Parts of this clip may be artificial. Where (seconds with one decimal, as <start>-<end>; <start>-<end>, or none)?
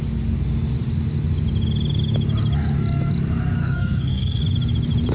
3.6-4.4